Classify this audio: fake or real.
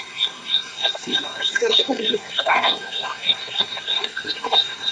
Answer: fake